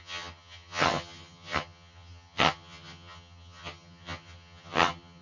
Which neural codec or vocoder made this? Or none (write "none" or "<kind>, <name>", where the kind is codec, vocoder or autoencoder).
vocoder, HiFi-GAN